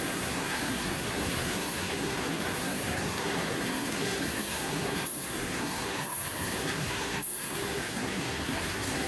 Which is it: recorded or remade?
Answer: remade